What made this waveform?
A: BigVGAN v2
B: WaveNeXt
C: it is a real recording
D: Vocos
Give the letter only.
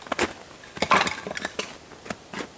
C